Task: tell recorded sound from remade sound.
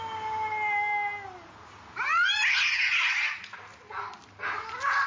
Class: recorded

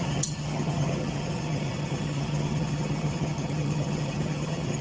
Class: remade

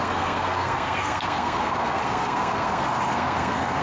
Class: remade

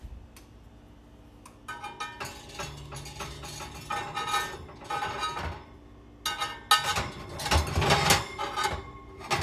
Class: recorded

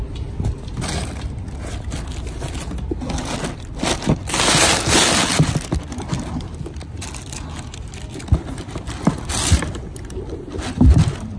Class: recorded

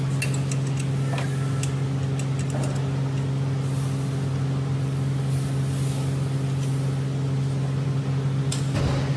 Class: recorded